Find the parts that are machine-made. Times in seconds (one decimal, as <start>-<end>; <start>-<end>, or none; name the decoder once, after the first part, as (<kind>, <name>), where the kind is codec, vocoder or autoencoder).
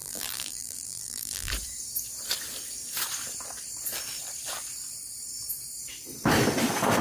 0.0-1.5 (vocoder, BigVGAN v2)